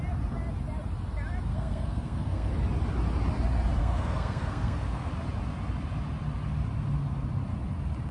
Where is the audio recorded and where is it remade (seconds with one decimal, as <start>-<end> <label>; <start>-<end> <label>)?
0.0-1.5 recorded; 1.5-2.5 remade; 2.5-3.8 recorded; 3.8-5.1 remade; 5.1-8.1 recorded